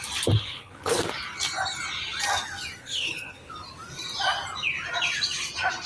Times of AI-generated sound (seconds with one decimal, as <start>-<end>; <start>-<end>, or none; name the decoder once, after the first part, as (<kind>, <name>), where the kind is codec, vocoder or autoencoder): 0.4-1.0 (codec, HILCodec); 2.8-3.5